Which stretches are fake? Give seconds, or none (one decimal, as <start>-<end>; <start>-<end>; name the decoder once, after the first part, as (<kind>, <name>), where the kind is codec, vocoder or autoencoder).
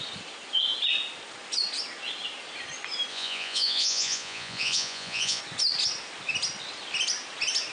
3.1-5.4 (vocoder, Vocos)